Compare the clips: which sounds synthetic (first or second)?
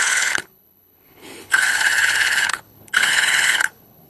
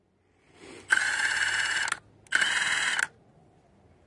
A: first